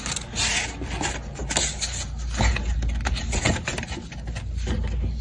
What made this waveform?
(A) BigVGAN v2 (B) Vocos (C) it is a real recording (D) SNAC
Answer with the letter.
C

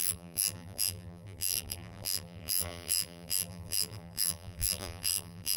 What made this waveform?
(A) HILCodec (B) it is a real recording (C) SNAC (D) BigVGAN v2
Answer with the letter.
D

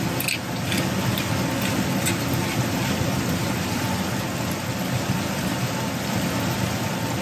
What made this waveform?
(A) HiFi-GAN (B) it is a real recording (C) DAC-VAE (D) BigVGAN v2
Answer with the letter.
B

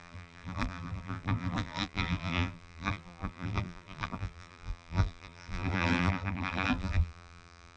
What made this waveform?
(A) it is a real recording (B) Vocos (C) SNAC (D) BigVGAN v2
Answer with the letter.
D